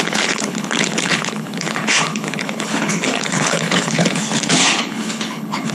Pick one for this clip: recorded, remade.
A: remade